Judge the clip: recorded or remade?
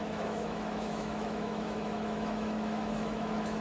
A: remade